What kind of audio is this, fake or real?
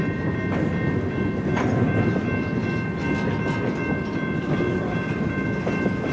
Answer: real